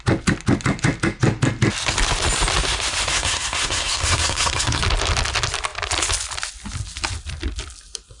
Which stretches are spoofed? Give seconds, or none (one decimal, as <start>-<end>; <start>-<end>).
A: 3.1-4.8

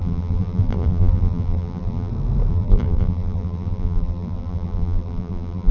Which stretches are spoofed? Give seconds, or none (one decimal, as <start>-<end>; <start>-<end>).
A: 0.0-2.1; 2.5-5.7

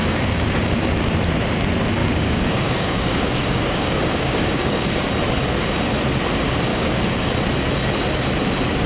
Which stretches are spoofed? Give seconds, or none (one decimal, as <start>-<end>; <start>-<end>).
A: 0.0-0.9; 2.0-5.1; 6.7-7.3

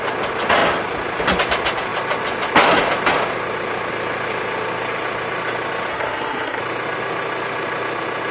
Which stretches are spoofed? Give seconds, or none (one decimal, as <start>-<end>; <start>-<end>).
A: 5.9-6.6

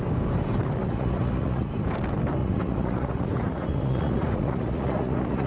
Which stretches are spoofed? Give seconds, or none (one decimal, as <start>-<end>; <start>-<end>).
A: 0.8-1.7; 2.4-5.5

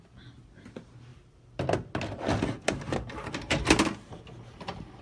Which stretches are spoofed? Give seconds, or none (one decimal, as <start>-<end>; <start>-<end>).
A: none

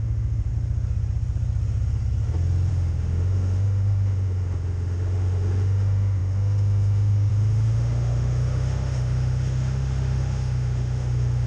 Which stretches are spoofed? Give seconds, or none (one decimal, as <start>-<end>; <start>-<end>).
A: 0.0-0.5; 2.7-11.5

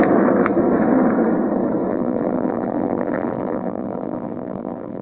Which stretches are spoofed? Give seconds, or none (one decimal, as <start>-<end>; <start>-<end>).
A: 1.9-5.0